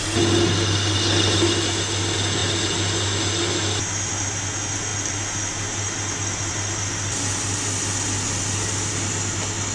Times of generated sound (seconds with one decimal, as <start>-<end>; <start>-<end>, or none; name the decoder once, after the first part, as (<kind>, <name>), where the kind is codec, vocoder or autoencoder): none